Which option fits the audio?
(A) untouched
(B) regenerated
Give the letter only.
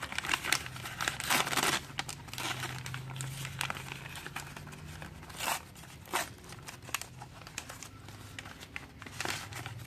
A